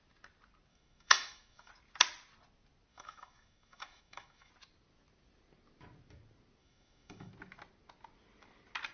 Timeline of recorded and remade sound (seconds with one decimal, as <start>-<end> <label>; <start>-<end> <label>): 0.0-0.7 recorded; 0.7-1.7 remade; 1.7-2.9 recorded; 2.9-4.5 remade; 4.5-6.6 recorded; 6.6-7.3 remade; 7.3-8.9 recorded

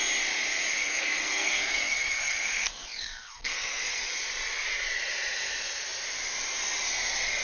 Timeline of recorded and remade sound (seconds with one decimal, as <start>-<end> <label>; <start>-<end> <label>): 0.0-0.7 recorded; 0.7-4.1 remade; 4.1-7.4 recorded

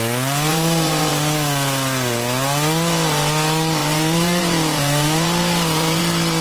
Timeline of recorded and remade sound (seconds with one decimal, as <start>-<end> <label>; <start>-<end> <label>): 0.0-0.5 recorded; 0.5-1.1 remade; 1.1-3.8 recorded; 3.8-6.0 remade; 6.0-6.4 recorded

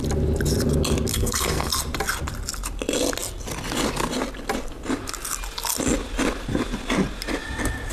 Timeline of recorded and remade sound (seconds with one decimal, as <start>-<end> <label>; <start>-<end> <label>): 0.0-1.1 recorded; 1.1-1.7 remade; 1.7-7.9 recorded

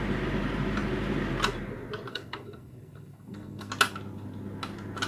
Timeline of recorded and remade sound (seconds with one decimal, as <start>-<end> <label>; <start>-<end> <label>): 0.0-2.1 recorded; 2.1-3.7 remade; 3.7-5.1 recorded